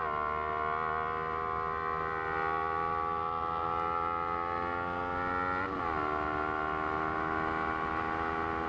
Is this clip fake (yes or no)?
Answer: no